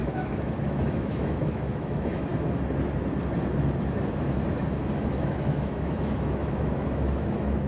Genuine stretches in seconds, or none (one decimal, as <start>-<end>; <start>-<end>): 2.3-5.1